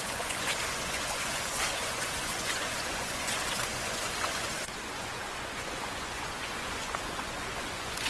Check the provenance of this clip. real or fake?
fake